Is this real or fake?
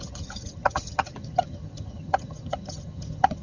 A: fake